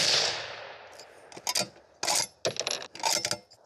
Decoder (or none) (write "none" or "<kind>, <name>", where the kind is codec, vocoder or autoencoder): none